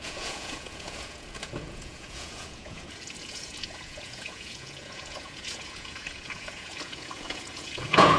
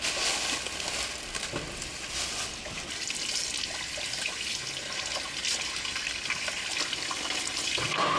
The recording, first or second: second